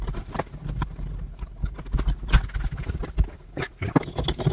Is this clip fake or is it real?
real